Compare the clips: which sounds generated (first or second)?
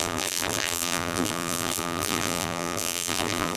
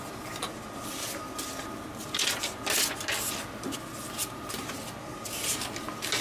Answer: first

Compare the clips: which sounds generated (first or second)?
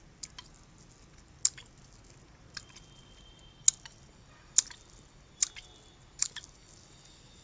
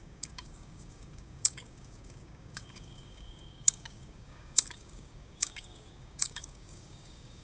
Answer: second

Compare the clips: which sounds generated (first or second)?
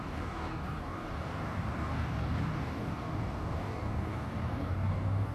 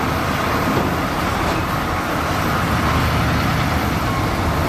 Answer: first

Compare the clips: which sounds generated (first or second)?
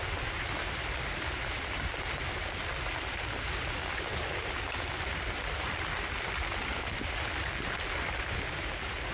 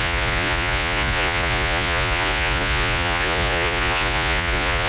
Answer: second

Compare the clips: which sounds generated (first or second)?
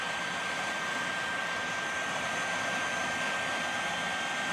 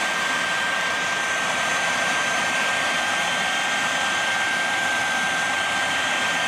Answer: second